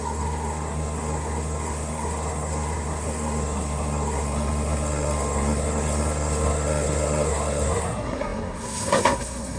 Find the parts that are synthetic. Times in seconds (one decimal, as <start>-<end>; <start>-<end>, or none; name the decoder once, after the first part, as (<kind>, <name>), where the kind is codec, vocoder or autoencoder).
0.0-9.6 (codec, SNAC)